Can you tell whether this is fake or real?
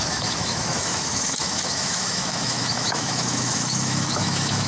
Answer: fake